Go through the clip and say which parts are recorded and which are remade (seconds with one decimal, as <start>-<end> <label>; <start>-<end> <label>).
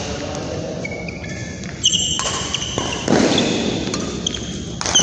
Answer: 0.0-1.4 recorded; 1.4-2.5 remade; 2.5-5.0 recorded